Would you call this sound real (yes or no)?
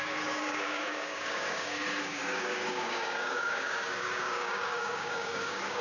no